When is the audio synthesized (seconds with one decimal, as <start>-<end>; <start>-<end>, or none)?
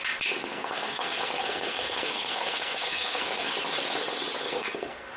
0.4-3.5; 4.4-5.2